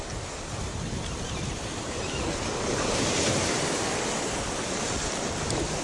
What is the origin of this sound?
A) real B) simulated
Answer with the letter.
A